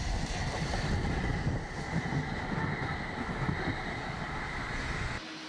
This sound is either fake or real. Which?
real